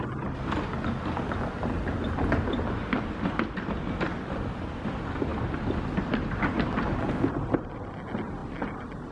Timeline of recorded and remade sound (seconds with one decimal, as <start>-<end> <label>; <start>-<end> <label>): 0.0-9.1 recorded

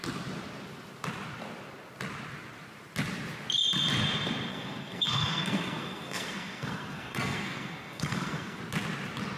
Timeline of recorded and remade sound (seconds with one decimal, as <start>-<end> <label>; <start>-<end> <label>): 0.0-4.5 recorded; 4.5-8.6 remade; 8.6-9.4 recorded

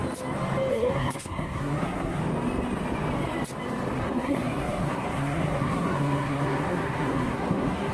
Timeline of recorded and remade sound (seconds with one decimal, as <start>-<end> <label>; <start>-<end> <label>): 0.0-0.7 recorded; 0.7-2.2 remade; 2.2-4.0 recorded; 4.0-7.9 remade